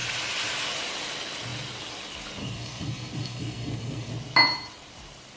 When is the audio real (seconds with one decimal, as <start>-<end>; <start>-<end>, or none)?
0.0-2.4; 4.1-5.4